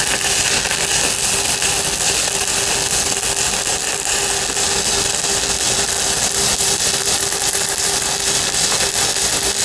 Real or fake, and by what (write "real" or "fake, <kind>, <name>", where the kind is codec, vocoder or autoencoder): real